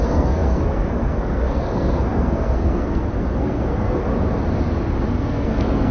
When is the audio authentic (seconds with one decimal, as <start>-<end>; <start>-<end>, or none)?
4.1-5.0